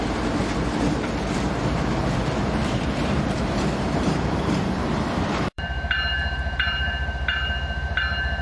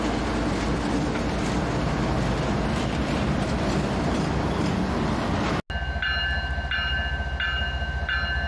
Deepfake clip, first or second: first